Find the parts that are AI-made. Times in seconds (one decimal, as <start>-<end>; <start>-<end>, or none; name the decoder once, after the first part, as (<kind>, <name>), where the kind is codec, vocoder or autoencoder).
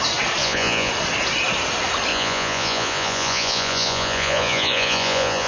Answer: 0.4-0.9 (vocoder, Vocos); 2.1-5.5